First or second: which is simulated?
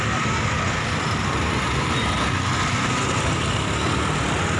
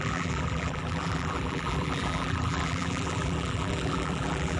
second